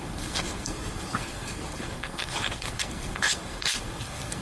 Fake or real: fake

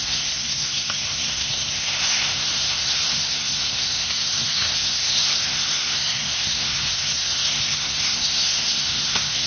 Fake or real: fake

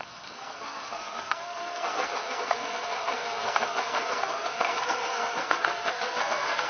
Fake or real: fake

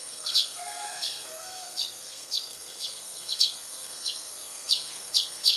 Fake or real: fake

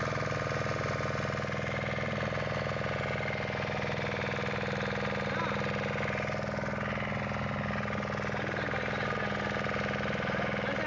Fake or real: real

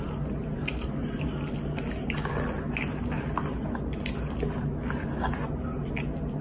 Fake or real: real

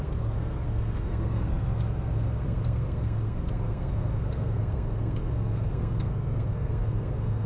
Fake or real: fake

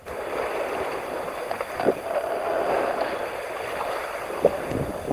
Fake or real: real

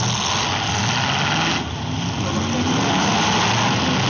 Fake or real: real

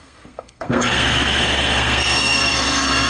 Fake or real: fake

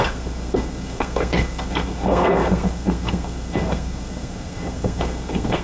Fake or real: fake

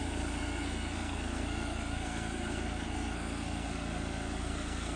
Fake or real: fake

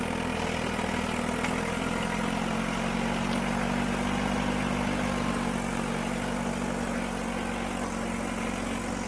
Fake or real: real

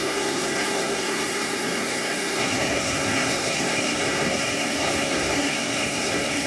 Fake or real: fake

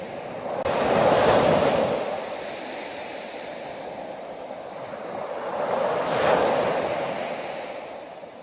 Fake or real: real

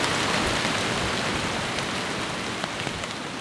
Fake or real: real